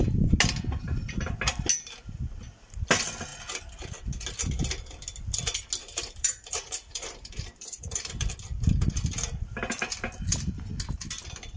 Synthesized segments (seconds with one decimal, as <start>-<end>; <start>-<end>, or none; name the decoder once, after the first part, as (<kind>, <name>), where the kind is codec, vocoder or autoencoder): 5.8-8.3 (vocoder, BigVGAN v2)